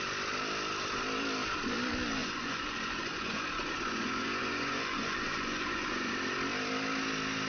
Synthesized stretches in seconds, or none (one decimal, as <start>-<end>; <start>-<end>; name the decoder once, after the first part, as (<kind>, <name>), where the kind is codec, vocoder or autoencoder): 2.2-6.1 (vocoder, Vocos)